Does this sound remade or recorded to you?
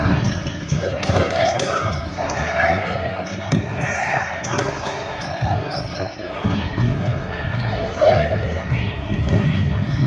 remade